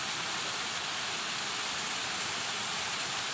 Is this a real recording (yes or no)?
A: yes